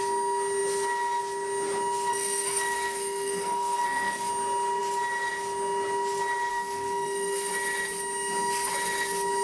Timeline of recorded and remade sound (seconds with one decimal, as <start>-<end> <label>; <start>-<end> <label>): 0.0-2.1 recorded; 2.1-4.3 remade; 4.3-6.5 recorded; 6.5-7.5 remade; 7.5-9.4 recorded